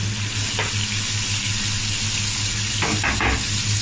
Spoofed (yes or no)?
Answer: no